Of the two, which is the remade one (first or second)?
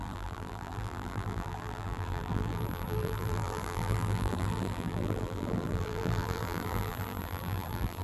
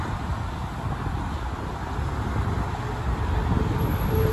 first